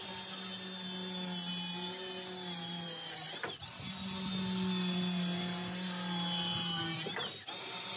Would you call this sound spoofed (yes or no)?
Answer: no